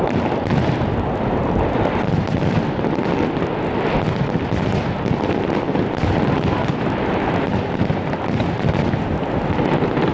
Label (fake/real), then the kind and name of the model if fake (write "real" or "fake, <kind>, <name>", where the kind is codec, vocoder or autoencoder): real